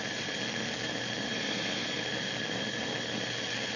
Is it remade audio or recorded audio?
recorded